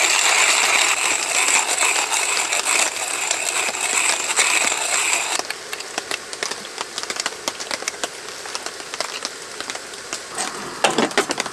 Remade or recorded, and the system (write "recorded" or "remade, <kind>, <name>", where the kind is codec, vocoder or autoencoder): recorded